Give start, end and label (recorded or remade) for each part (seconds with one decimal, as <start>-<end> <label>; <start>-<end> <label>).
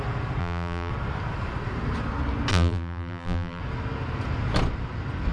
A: 0.0-0.4 recorded; 0.4-0.9 remade; 0.9-2.5 recorded; 2.5-3.6 remade; 3.6-5.3 recorded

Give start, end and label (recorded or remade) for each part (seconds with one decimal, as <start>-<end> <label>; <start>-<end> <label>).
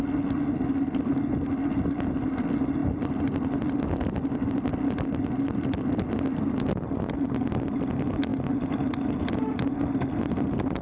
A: 0.0-10.8 recorded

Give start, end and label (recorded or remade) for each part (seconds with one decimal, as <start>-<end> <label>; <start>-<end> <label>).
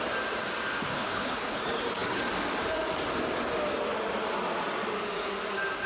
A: 0.0-0.9 recorded; 0.9-1.6 remade; 1.6-5.9 recorded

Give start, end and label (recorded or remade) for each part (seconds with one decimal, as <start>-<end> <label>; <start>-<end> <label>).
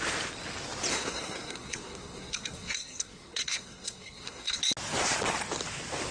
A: 0.0-0.9 recorded; 0.9-4.6 remade; 4.6-6.1 recorded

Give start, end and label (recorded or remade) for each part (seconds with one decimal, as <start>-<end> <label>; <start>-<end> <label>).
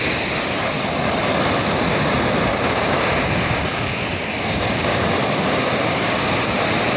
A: 0.0-2.5 recorded; 2.5-6.5 remade; 6.5-7.0 recorded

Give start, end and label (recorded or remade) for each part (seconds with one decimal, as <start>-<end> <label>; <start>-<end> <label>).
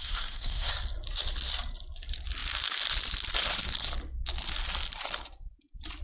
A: 0.0-0.7 remade; 0.7-6.0 recorded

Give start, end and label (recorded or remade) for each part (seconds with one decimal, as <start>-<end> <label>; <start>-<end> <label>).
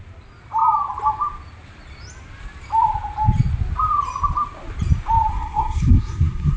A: 0.0-5.3 recorded; 5.3-6.6 remade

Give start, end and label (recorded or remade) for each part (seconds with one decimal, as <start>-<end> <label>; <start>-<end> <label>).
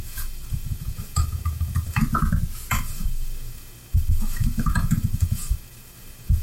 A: 0.0-2.0 remade; 2.0-2.8 recorded; 2.8-6.4 remade